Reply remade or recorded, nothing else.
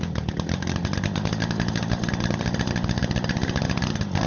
recorded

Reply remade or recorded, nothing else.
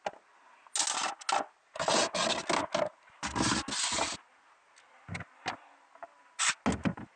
recorded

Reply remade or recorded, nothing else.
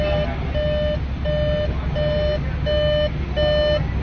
recorded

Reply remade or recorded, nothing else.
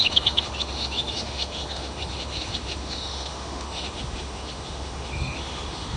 remade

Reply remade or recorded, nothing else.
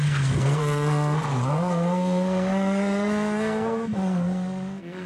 remade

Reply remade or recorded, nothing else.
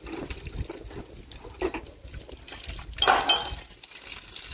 recorded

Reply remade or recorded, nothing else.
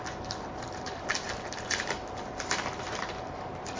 recorded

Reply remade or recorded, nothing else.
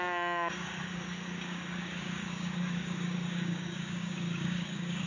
remade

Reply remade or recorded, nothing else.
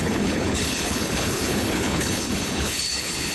remade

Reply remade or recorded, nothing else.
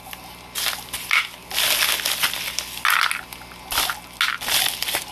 recorded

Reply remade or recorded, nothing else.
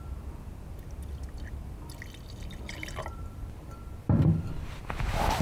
recorded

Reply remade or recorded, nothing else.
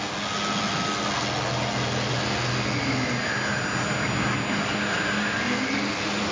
recorded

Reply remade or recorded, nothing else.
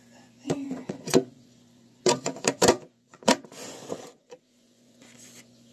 remade